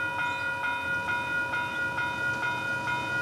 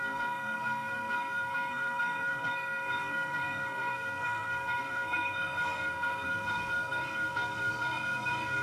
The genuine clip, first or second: first